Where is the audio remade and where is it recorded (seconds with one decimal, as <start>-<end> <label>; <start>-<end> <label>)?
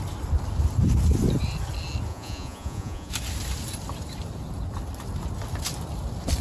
0.0-2.1 recorded; 2.1-3.1 remade; 3.1-6.4 recorded